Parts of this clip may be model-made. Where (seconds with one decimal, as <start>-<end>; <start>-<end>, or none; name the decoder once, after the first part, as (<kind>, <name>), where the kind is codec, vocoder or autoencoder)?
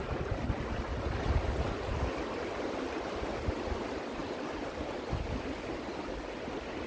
none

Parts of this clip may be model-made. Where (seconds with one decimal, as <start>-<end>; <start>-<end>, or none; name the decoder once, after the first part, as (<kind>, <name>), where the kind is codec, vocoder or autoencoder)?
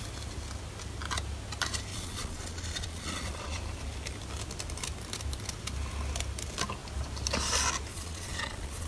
1.9-3.6 (vocoder, Vocos); 7.9-8.9